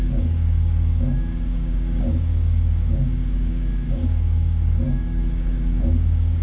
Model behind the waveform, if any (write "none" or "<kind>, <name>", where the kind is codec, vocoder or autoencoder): codec, DAC